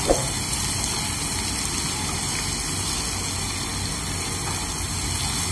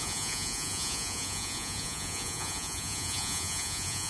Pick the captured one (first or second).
first